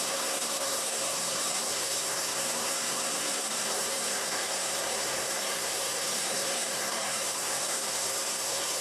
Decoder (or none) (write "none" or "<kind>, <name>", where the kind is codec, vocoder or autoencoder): codec, SNAC